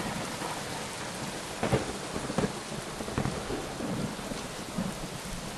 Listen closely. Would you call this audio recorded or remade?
recorded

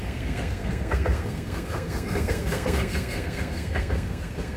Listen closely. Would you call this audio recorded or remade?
remade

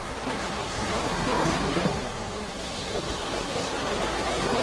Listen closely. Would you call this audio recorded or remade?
remade